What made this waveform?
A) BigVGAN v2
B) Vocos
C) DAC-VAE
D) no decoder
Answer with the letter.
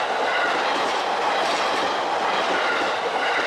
D